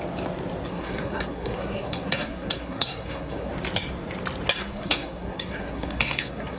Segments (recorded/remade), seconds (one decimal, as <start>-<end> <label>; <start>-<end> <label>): 0.0-0.7 recorded; 0.7-3.5 remade; 3.5-4.6 recorded; 4.6-6.6 remade